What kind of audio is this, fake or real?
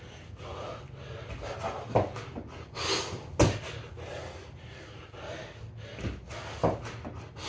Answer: real